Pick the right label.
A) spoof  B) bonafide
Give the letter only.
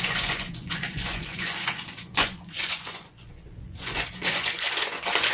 A